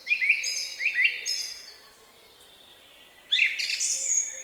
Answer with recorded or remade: recorded